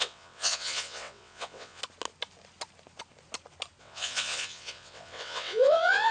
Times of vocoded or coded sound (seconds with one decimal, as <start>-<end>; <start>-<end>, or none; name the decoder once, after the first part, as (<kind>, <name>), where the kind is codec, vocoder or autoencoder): 0.0-1.8 (vocoder, WaveNeXt); 3.8-6.1